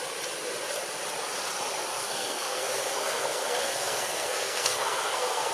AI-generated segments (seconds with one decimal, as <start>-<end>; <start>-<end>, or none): 1.9-5.5